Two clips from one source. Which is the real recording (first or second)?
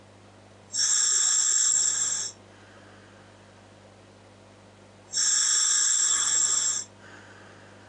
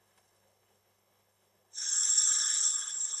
first